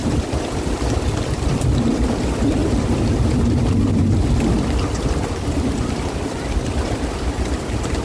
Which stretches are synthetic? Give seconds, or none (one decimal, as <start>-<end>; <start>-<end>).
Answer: 0.0-2.6; 6.1-8.0